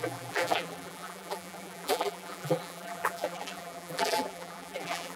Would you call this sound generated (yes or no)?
yes